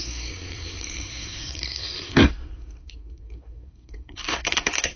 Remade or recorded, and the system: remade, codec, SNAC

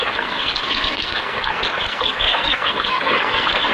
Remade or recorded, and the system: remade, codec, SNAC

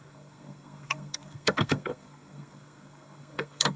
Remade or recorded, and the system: remade, codec, SNAC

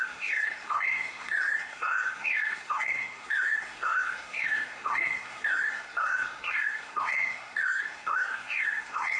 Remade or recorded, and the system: remade, codec, SNAC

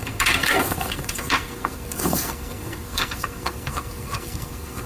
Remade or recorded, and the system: remade, codec, SNAC